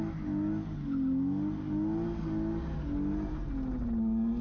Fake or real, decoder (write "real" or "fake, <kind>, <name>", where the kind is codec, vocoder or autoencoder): real